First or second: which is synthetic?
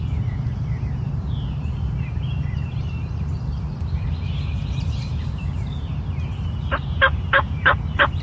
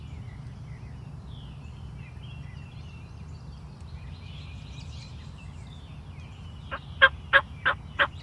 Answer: first